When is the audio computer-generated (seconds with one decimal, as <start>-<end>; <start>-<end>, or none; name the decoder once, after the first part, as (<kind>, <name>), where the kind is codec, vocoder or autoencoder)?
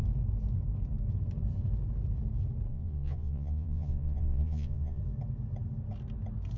2.7-5.0 (vocoder, Vocos)